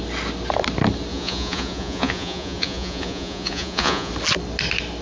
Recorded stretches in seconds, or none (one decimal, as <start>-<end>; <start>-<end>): 0.0-1.1; 4.1-5.0